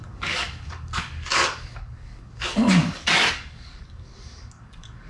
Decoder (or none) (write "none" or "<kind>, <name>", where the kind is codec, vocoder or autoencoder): codec, DAC